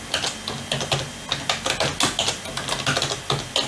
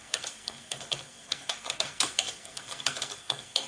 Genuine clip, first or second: first